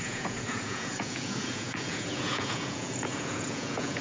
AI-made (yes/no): yes